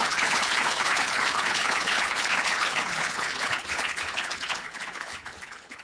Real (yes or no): no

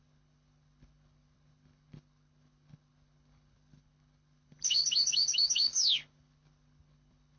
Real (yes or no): no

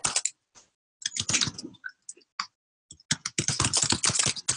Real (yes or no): yes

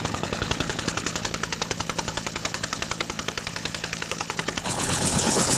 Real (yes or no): no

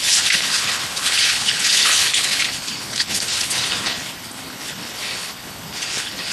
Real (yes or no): no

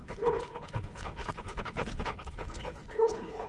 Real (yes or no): no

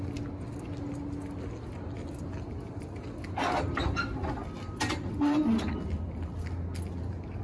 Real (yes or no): yes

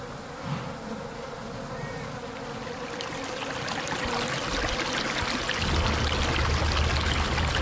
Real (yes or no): yes